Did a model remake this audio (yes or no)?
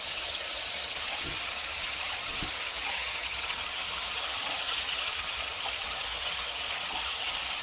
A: yes